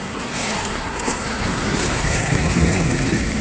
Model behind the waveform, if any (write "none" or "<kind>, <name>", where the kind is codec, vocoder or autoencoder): codec, SNAC